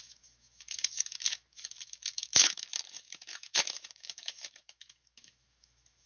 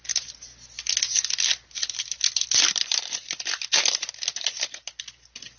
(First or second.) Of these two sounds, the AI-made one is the first